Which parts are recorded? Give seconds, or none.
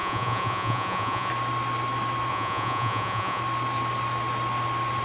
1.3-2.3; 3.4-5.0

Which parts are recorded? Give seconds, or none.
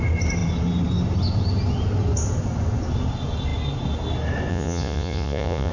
0.0-4.5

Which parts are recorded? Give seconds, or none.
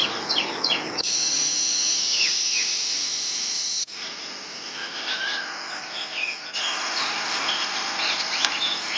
0.0-9.0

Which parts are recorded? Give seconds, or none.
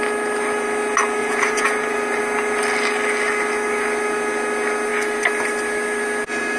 0.0-1.2; 2.2-6.6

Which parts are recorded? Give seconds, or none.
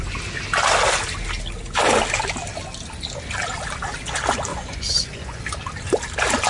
0.0-4.5; 5.4-6.5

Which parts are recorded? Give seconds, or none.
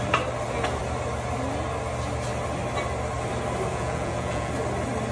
0.0-3.7; 4.5-5.1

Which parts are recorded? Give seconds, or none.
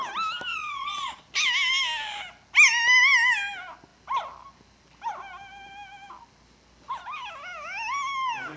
0.0-0.5; 1.2-8.6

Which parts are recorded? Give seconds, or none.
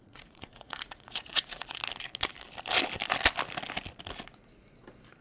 1.8-5.2